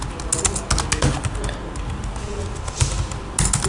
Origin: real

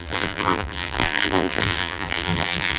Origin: fake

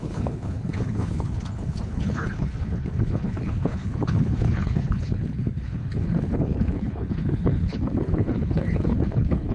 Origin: fake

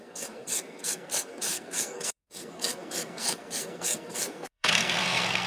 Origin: fake